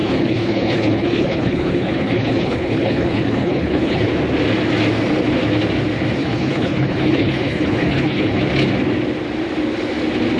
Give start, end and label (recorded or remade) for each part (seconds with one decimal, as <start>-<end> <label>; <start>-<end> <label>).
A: 0.0-4.1 remade; 4.1-6.2 recorded; 6.2-8.4 remade; 8.4-10.4 recorded